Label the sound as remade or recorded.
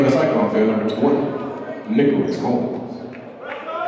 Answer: remade